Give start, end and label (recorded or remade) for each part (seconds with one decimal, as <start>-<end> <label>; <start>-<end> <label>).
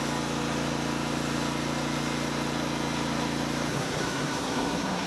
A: 0.0-3.7 recorded; 3.7-5.1 remade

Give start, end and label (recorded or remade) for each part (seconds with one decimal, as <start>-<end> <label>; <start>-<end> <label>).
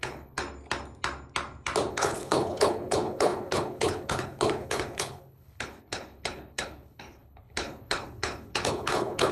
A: 0.0-0.4 remade; 0.4-1.9 recorded; 1.9-9.3 remade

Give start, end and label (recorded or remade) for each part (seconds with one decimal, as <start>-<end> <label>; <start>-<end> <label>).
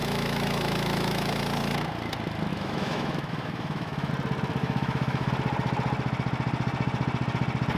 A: 0.0-1.4 remade; 1.4-2.5 recorded; 2.5-4.1 remade; 4.1-4.6 recorded; 4.6-5.3 remade; 5.3-7.8 recorded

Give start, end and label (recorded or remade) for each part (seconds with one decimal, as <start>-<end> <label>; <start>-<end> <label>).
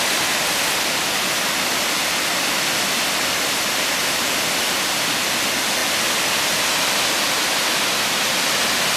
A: 0.0-9.0 recorded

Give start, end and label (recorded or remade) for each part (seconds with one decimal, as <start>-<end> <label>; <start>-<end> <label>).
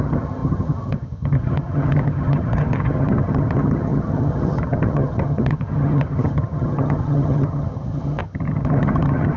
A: 0.0-9.4 remade